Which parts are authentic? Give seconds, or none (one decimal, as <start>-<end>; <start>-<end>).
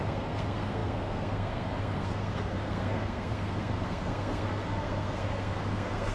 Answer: none